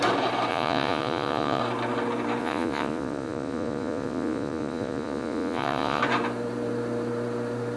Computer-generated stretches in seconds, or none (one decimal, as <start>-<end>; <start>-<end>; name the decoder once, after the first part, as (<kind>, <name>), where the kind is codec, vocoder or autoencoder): 0.5-1.6 (vocoder, Vocos); 2.4-6.0